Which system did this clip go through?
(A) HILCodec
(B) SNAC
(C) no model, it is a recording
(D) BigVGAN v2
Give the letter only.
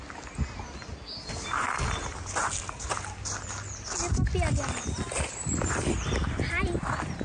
C